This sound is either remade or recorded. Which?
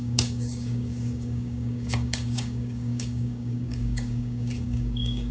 remade